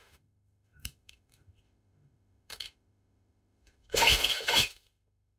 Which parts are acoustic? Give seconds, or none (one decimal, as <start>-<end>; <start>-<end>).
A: none

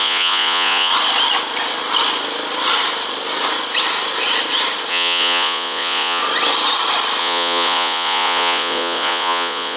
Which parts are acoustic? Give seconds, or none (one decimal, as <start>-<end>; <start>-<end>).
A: 0.9-4.9; 6.2-7.2

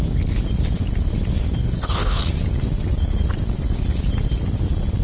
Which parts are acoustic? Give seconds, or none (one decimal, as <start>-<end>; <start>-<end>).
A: 0.0-1.6; 2.2-5.0